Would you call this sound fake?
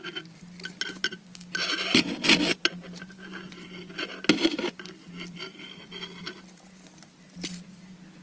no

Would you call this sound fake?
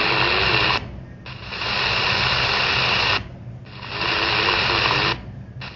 no